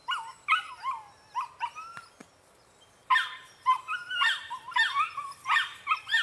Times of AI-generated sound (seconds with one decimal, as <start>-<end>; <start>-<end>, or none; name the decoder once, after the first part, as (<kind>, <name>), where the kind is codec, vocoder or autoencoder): 0.0-0.7 (vocoder, BigVGAN v2); 2.2-6.2